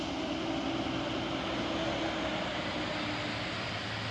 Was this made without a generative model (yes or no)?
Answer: yes